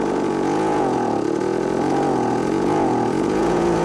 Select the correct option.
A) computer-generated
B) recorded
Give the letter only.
A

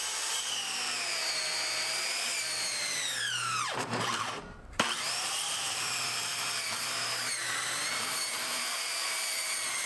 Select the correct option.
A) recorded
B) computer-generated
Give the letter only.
B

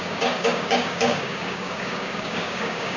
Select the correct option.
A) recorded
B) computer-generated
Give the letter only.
B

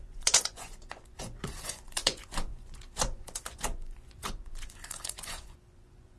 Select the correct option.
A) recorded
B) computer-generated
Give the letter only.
B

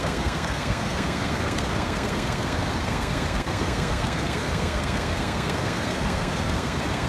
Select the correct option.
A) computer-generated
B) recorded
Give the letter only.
A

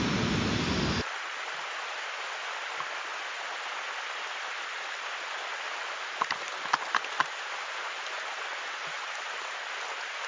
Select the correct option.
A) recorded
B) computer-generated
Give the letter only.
A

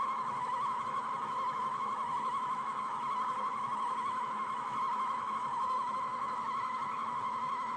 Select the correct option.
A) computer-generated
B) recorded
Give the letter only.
A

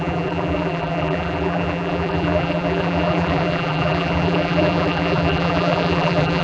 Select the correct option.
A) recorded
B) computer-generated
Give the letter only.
B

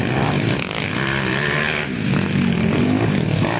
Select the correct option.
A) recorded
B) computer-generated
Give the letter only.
A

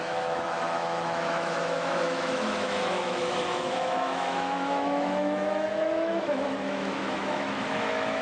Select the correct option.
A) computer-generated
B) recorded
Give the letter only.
A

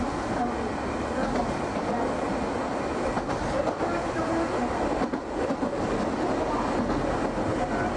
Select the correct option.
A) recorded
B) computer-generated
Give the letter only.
A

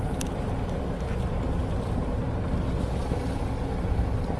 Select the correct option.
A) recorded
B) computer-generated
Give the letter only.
A